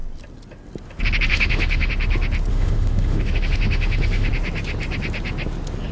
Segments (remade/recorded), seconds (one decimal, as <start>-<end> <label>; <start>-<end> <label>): 0.0-1.3 recorded; 1.3-1.9 remade; 1.9-2.5 recorded; 2.5-4.3 remade; 4.3-5.9 recorded